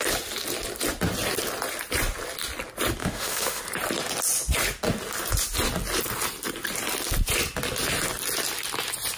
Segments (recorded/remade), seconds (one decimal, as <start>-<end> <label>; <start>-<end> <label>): 0.0-3.0 recorded; 3.0-3.6 remade; 3.6-9.2 recorded